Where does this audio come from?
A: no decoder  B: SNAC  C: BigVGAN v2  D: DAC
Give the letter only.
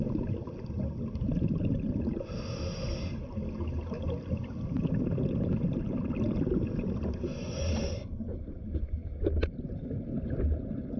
A